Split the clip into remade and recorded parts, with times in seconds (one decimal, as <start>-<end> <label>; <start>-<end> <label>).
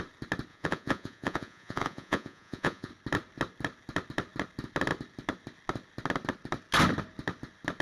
0.0-0.5 recorded; 0.5-2.9 remade; 2.9-7.8 recorded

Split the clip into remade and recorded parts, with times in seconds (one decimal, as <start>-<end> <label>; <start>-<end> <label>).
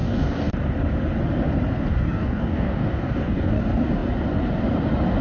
0.0-0.5 remade; 0.5-1.9 recorded; 1.9-3.6 remade; 3.6-5.2 recorded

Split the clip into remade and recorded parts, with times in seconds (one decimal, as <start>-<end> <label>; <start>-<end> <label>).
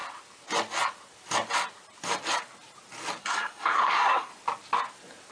0.0-3.2 recorded; 3.2-4.3 remade; 4.3-5.3 recorded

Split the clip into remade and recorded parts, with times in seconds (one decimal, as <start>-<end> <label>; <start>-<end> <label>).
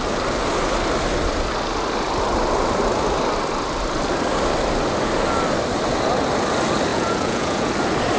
0.0-6.9 recorded; 6.9-7.7 remade; 7.7-8.2 recorded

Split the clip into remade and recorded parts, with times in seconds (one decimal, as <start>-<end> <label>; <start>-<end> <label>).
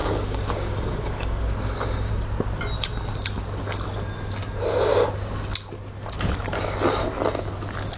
0.0-2.1 remade; 2.1-8.0 recorded